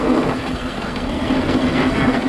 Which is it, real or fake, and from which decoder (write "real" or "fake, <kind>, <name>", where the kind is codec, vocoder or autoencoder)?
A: fake, codec, SNAC